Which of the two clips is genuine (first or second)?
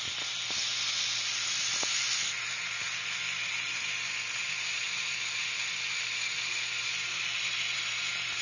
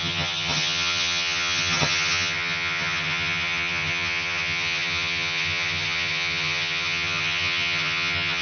first